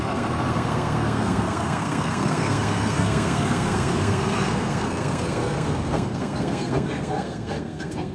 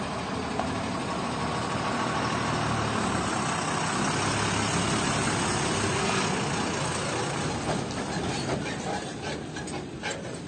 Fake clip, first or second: first